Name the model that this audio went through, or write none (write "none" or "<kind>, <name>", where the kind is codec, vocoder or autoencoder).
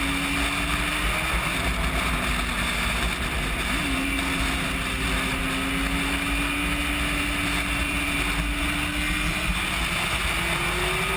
none